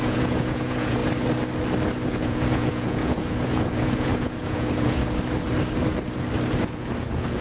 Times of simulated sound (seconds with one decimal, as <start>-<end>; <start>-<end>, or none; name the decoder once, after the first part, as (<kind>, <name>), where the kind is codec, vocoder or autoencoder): 0.0-1.0 (vocoder, Vocos); 2.1-5.0; 6.8-7.4